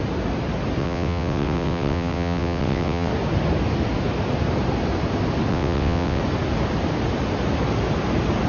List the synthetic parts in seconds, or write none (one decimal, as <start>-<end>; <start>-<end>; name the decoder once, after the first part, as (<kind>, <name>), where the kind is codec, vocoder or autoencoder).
0.8-3.1 (vocoder, WaveNeXt); 5.5-6.2